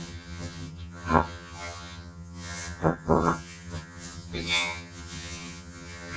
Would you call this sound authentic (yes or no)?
no